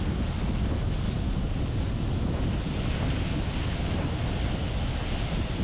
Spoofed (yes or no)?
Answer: no